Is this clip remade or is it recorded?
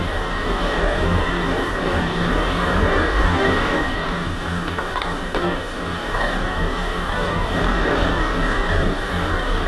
remade